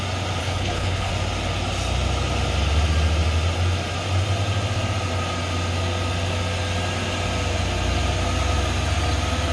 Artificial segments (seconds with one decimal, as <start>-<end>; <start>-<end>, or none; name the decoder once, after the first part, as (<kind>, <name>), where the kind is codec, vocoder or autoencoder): 0.4-1.1 (codec, HILCodec)